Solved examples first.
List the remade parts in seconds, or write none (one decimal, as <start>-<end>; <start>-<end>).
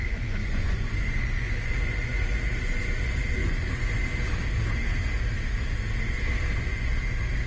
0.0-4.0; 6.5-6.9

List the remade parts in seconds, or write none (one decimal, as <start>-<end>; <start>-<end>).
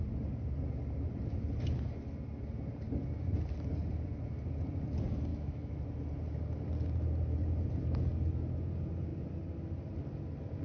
5.3-5.8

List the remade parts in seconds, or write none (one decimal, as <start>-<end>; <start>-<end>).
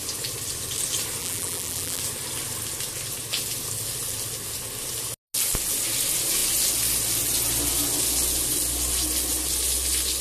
1.2-2.0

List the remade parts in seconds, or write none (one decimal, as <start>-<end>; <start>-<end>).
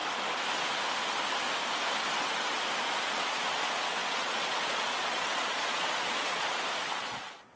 2.8-7.6